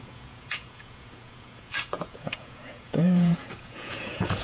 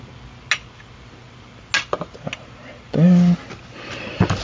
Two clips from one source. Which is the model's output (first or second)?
first